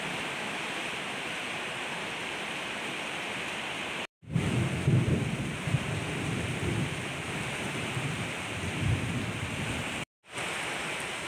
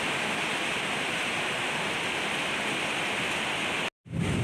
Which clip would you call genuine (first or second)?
second